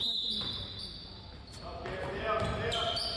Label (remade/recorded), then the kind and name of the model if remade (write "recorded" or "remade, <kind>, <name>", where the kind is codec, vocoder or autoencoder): recorded